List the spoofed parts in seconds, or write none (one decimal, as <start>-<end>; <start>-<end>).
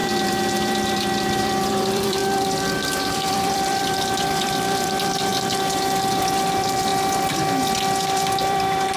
0.0-5.3; 6.2-6.9; 8.0-9.0